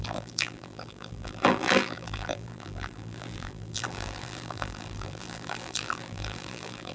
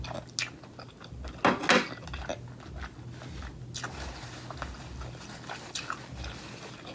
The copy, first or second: first